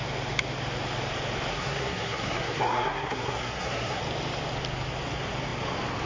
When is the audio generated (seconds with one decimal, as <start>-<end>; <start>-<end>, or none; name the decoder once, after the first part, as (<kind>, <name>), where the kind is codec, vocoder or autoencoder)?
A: 1.5-4.0 (codec, SNAC)